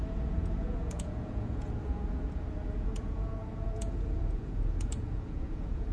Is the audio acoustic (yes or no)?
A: no